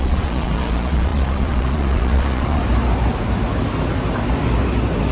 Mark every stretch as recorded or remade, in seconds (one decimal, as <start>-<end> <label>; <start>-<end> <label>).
0.0-2.6 remade; 2.6-5.1 recorded